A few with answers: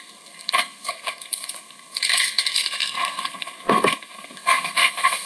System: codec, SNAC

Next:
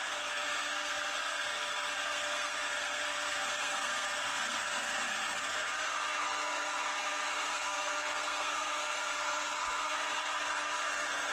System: codec, SNAC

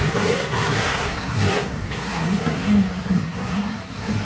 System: codec, SNAC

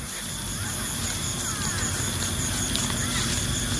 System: none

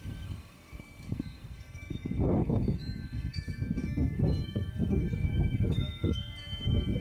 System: codec, SNAC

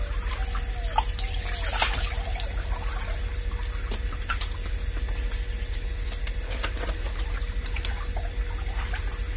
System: none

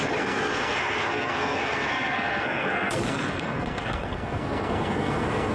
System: codec, SNAC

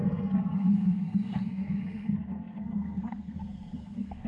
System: codec, SNAC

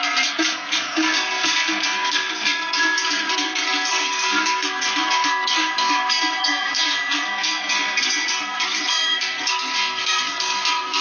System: codec, SNAC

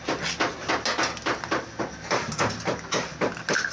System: none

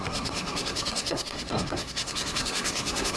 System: codec, SNAC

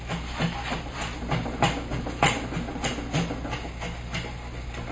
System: none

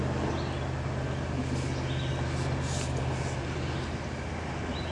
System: none